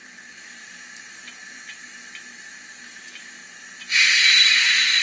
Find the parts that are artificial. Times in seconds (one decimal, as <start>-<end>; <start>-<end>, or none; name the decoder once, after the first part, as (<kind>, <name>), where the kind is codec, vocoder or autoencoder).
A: 0.0-3.4 (vocoder, BigVGAN v2); 4.5-5.0